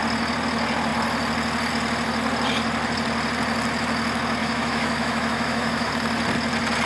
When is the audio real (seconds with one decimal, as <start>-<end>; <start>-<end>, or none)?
0.0-4.4; 5.9-6.9